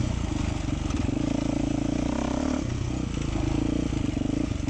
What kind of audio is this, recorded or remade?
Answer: recorded